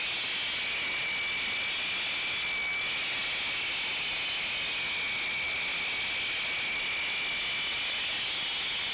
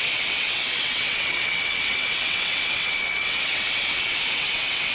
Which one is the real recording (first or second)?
first